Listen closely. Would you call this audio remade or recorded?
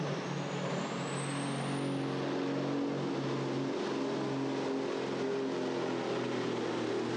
recorded